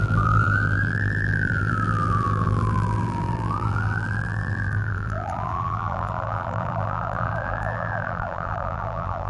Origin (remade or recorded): remade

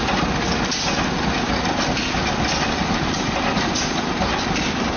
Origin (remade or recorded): recorded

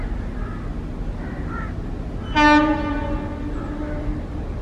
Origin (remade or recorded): recorded